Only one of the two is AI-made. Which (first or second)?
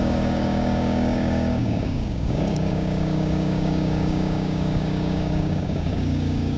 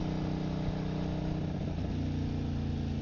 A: first